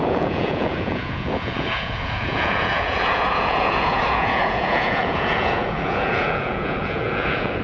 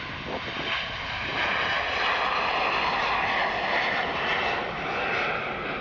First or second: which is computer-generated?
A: first